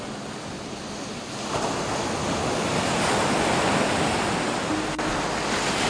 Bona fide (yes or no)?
yes